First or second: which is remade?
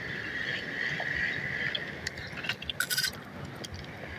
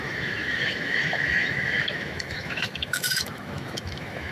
second